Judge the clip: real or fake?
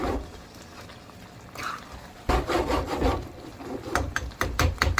fake